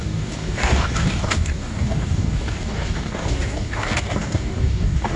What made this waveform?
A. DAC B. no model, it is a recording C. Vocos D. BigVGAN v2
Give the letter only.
A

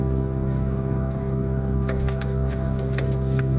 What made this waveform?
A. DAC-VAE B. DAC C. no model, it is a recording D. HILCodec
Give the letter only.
B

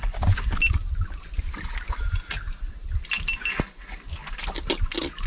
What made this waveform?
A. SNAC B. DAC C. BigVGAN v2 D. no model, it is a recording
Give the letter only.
D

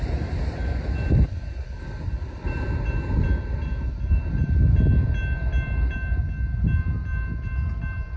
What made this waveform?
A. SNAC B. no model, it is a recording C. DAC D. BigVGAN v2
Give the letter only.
B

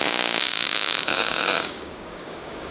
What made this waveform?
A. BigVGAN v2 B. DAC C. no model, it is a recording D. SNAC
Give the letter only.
B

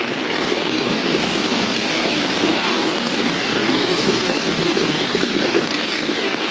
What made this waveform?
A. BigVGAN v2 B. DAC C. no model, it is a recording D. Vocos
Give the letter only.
B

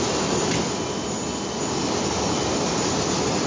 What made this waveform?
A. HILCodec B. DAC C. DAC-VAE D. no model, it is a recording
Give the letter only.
D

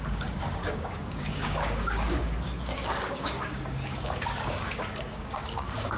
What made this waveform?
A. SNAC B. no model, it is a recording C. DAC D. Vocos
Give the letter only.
C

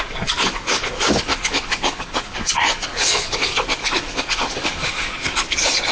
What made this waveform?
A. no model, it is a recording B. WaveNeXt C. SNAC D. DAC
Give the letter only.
D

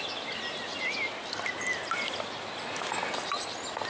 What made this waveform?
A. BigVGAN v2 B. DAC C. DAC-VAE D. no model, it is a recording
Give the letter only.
D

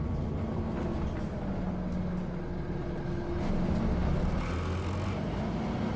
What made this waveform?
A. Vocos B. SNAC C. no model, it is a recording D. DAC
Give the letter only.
C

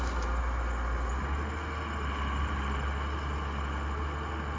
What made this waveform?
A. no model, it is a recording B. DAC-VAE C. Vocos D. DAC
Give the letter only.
A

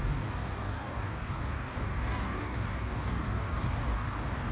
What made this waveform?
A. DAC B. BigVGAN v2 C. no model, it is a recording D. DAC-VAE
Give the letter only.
A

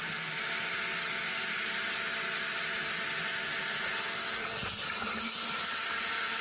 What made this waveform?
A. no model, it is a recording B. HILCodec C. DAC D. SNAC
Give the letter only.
A